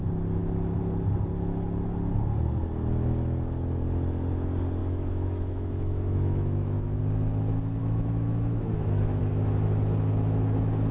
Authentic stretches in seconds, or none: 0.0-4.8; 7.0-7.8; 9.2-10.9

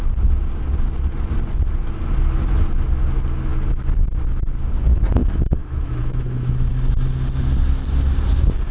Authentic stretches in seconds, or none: 0.0-5.2; 6.7-8.7

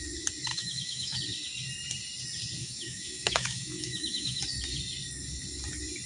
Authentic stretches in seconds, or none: 0.0-0.5; 1.2-2.6; 4.4-6.1

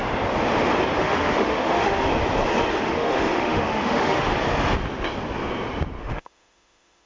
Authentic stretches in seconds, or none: 0.0-1.0; 2.1-2.7; 4.3-6.0